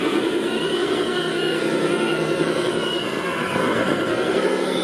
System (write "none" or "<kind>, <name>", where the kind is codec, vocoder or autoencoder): codec, SNAC